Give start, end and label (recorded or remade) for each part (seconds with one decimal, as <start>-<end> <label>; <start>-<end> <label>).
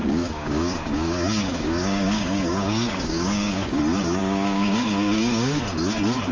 0.0-3.8 remade; 3.8-4.2 recorded; 4.2-5.6 remade; 5.6-6.3 recorded